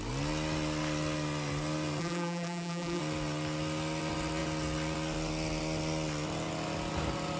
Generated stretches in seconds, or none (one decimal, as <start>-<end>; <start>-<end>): 2.0-3.0